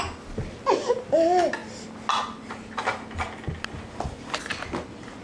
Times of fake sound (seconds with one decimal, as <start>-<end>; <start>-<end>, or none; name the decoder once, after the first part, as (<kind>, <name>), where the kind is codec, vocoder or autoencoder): none